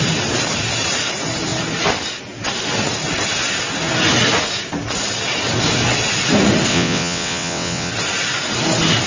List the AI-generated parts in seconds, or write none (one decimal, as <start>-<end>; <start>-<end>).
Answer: 6.7-7.9

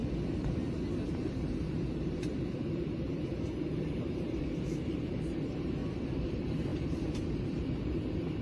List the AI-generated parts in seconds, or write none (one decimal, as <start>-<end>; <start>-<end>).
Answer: 1.3-5.8; 6.3-8.4

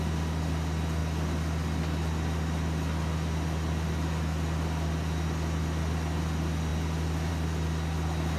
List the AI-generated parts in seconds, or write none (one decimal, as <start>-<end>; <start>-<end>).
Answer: none

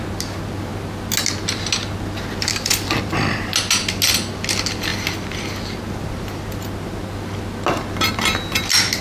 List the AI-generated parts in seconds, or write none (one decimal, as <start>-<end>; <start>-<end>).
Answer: none

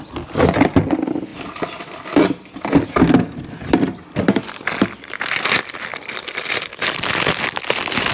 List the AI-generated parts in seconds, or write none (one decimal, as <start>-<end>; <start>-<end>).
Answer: 1.3-2.5; 5.9-7.3

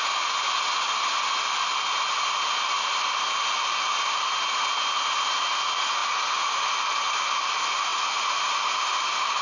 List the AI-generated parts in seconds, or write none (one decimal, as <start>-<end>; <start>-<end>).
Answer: none